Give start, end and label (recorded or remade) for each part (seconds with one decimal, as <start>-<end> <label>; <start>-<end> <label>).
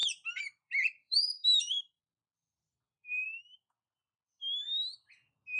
0.0-3.4 remade; 3.4-5.6 recorded